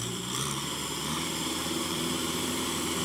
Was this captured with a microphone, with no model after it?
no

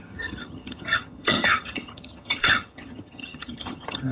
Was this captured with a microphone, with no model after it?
no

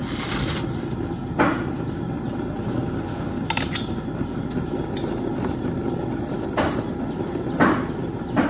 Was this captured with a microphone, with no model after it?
yes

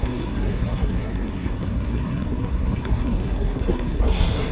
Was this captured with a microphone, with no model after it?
no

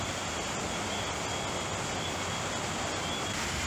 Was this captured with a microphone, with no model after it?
yes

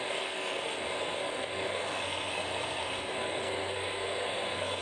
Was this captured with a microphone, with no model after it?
no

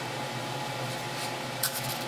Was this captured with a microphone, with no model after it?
yes